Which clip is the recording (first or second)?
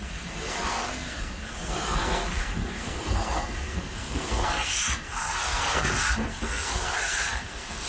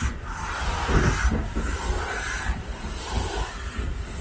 second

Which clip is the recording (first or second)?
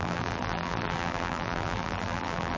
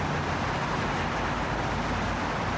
second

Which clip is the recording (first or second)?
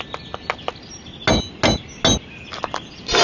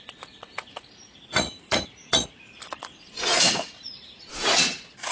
first